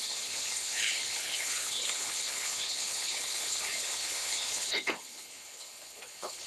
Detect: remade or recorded remade